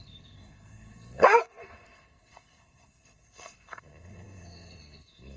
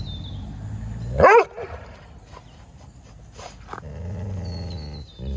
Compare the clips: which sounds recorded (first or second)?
second